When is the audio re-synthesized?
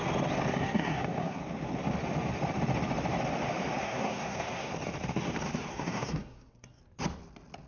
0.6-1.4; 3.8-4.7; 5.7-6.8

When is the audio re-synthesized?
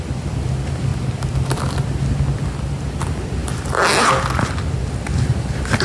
none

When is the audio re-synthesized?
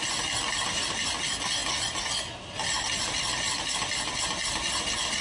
none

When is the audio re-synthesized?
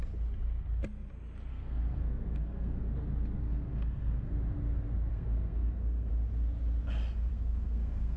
1.5-2.8; 3.4-4.3; 5.1-6.1; 7.3-8.2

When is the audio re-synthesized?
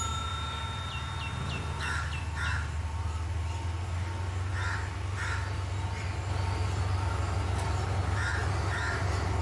none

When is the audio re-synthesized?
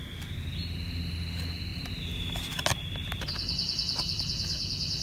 none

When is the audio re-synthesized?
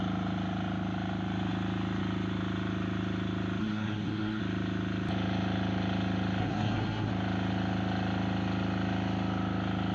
3.6-4.4; 6.4-7.1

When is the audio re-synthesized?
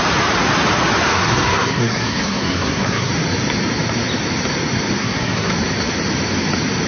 1.1-3.1; 5.0-5.5